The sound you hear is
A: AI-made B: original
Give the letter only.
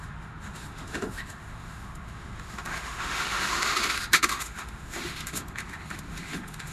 A